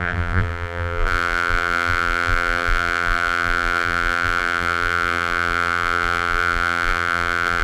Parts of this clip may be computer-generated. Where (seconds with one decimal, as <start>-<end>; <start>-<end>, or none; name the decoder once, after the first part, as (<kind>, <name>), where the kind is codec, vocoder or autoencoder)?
0.0-7.6 (vocoder, BigVGAN v2)

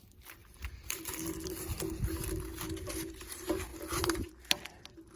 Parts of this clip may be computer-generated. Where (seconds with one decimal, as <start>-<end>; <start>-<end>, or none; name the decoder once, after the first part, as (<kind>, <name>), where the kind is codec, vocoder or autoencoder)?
0.4-1.1 (vocoder, BigVGAN v2); 3.7-4.3

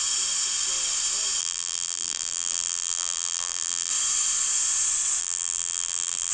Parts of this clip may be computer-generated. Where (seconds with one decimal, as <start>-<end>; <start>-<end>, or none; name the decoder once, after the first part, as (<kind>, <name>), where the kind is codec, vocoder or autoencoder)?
1.4-3.9 (vocoder, BigVGAN v2); 5.2-6.3

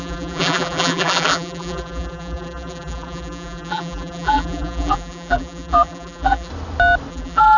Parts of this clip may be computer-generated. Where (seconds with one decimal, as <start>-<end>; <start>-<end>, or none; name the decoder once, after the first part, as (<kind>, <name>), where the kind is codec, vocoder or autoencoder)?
0.0-6.5 (vocoder, BigVGAN v2); 7.1-7.6

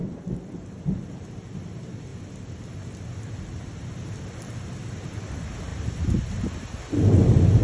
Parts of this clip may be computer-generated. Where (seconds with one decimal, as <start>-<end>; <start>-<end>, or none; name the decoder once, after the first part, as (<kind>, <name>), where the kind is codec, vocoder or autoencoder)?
none

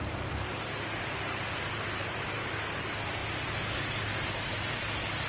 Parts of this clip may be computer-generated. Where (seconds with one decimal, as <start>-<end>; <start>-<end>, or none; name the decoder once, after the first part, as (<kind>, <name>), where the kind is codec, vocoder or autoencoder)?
0.0-3.2 (vocoder, BigVGAN v2); 4.4-5.3

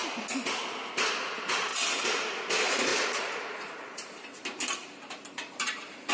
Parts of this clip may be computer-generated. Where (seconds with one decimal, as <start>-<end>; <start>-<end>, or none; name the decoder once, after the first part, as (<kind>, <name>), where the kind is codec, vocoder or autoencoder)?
2.9-6.1 (vocoder, BigVGAN v2)